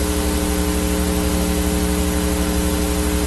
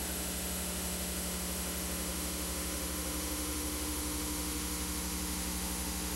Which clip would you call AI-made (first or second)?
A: second